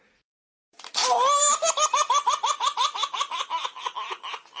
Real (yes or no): yes